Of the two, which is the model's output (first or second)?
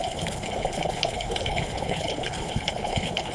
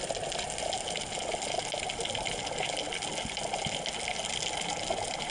first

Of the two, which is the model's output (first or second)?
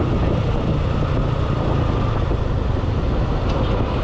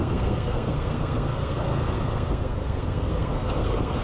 second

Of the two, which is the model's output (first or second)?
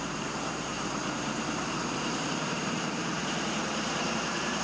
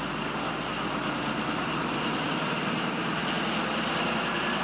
first